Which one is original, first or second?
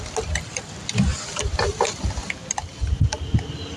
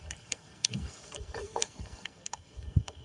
first